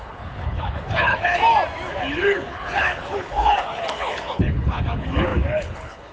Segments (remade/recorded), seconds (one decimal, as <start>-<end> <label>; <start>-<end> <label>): 0.0-1.4 remade; 1.4-2.0 recorded; 2.0-6.1 remade